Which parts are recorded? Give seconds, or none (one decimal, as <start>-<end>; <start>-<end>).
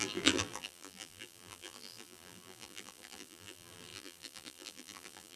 none